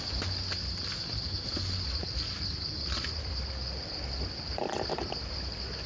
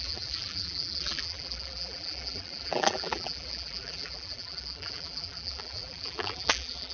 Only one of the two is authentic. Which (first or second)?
first